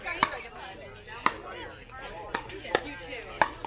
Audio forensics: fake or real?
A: real